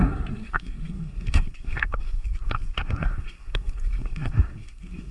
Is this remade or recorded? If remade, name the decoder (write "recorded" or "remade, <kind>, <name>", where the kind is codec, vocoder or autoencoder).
remade, codec, SNAC